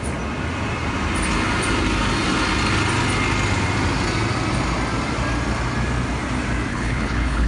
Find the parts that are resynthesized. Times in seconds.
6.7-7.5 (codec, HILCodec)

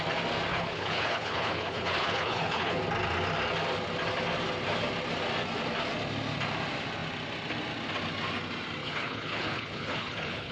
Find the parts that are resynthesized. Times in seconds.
0.5-2.8 (codec, HILCodec); 8.8-10.5

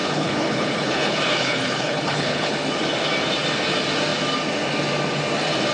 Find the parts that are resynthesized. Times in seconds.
0.0-2.5 (codec, HILCodec)

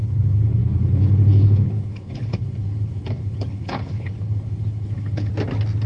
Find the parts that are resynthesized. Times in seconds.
0.0-5.3 (codec, HILCodec)

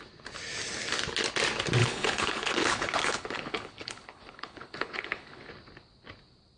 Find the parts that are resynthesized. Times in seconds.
1.8-5.5 (codec, HILCodec)

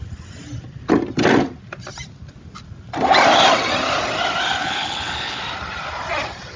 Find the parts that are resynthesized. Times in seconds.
4.6-5.4 (codec, HILCodec)

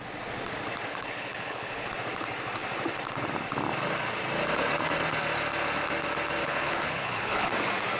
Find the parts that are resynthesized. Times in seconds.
0.9-1.9 (codec, HILCodec); 6.4-7.5

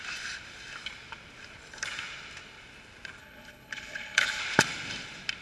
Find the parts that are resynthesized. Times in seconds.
3.2-4.4 (codec, HILCodec)